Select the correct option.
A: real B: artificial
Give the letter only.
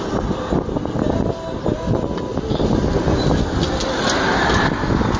A